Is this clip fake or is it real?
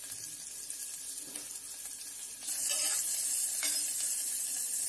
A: real